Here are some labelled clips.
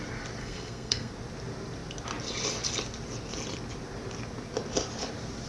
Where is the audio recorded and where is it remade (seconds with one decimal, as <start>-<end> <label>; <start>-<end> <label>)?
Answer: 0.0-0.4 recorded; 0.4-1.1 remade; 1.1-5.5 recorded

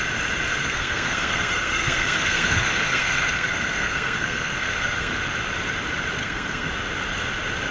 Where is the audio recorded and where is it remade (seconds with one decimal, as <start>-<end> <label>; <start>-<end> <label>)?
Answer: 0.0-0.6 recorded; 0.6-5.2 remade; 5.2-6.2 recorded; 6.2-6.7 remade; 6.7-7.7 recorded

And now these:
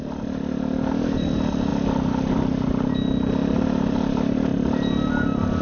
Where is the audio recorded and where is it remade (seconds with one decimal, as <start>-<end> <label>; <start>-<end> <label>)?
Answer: 0.0-5.6 recorded

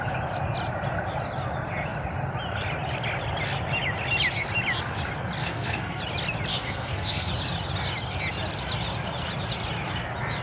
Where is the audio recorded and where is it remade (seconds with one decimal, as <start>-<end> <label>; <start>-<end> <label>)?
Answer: 0.0-5.4 recorded; 5.4-6.0 remade; 6.0-6.5 recorded; 6.5-7.3 remade; 7.3-10.4 recorded

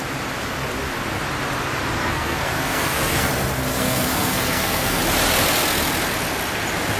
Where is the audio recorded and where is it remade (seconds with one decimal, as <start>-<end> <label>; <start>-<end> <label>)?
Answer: 0.0-2.0 recorded; 2.0-3.3 remade; 3.3-3.7 recorded; 3.7-5.0 remade; 5.0-7.0 recorded